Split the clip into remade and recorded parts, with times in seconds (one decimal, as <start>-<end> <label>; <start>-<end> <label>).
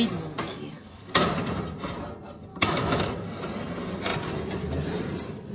0.0-0.5 recorded; 0.5-1.1 remade; 1.1-2.5 recorded; 2.5-3.0 remade; 3.0-5.5 recorded